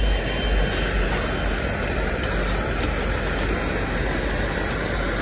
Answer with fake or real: real